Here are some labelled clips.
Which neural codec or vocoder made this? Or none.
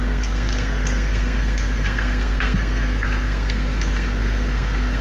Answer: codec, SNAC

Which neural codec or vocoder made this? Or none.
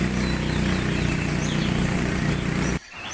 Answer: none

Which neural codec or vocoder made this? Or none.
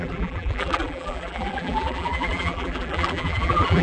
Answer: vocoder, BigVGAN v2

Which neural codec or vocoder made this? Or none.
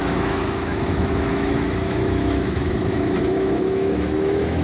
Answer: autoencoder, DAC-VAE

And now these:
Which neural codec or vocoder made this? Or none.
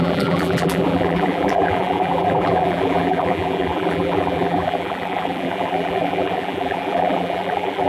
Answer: vocoder, BigVGAN v2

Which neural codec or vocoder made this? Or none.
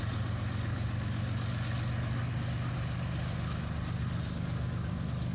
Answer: none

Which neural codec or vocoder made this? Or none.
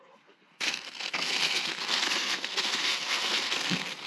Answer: codec, SNAC